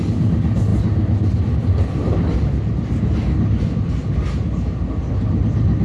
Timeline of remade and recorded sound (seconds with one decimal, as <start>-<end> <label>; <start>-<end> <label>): 0.0-5.8 recorded